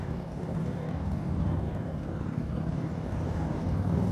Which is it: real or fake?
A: fake